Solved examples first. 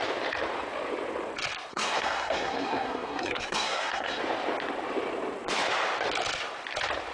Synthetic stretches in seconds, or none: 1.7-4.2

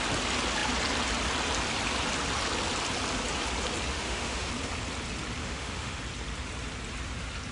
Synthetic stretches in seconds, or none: 3.9-4.5; 5.4-6.0

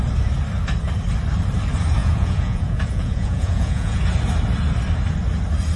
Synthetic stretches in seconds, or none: 2.0-4.0

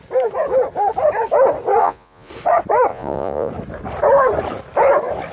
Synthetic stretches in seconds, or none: 1.8-2.3; 2.9-3.5

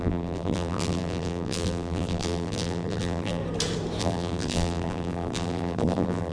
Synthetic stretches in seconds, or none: 0.0-3.4; 4.0-6.3

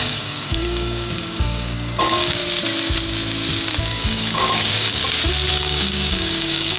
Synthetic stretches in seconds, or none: 0.0-2.4; 3.8-5.0; 5.5-6.8

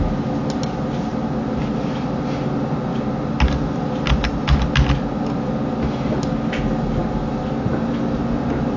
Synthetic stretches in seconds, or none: none

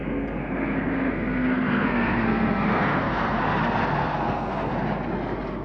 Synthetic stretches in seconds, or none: 0.0-3.4; 4.0-4.7